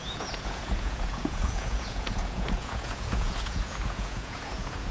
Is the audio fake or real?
fake